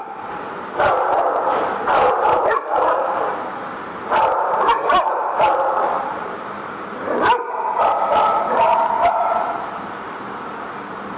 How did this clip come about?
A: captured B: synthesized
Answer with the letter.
B